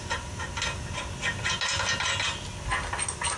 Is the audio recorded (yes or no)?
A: yes